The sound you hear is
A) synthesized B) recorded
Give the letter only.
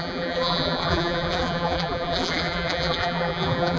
A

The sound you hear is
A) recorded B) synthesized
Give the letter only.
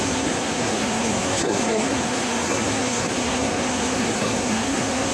B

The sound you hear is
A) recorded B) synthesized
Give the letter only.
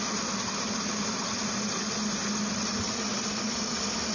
A